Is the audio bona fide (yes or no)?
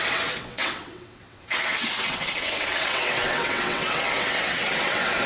no